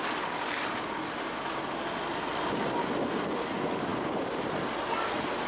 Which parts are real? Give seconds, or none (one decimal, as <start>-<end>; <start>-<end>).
0.0-5.5